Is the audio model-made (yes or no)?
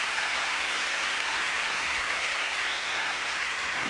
yes